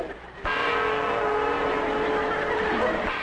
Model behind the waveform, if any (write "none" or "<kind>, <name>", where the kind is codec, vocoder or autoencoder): none